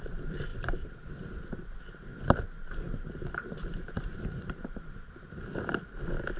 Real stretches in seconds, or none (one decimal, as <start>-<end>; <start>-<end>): 0.0-0.5; 1.1-2.1; 5.4-6.4